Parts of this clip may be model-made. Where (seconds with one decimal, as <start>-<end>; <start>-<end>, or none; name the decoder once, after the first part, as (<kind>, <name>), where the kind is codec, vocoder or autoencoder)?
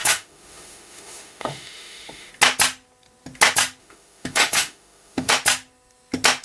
0.0-2.3 (autoencoder, DAC-VAE); 3.8-5.3